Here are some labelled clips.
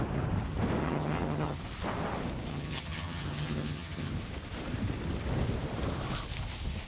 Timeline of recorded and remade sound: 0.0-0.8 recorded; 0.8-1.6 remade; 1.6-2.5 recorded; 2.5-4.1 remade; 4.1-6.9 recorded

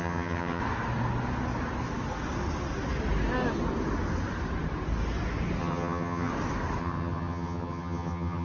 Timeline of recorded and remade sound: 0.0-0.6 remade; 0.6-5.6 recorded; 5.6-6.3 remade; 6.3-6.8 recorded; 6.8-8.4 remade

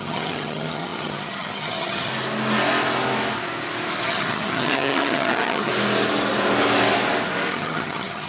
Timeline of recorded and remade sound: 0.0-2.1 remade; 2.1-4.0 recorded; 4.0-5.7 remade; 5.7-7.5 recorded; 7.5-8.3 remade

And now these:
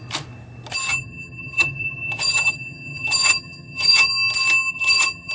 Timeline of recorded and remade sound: 0.0-0.9 recorded; 0.9-4.1 remade; 4.1-4.7 recorded; 4.7-5.3 remade

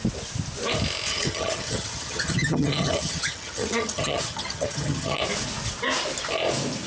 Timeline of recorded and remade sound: 0.0-1.1 recorded; 1.1-5.2 remade; 5.2-6.9 recorded

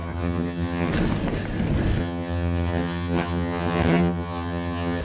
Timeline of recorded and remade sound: 0.0-0.9 remade; 0.9-2.0 recorded; 2.0-5.0 remade